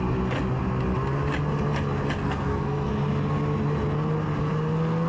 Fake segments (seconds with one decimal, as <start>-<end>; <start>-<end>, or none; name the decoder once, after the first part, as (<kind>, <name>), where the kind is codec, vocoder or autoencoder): 2.2-2.9 (codec, SNAC)